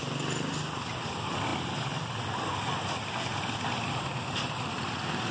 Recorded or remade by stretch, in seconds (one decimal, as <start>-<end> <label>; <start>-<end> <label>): 0.0-1.5 recorded; 1.5-4.7 remade; 4.7-5.3 recorded